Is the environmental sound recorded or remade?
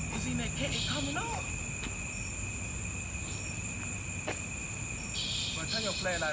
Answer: recorded